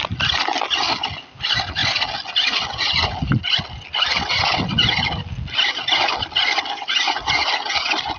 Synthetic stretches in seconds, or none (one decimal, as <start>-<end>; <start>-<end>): none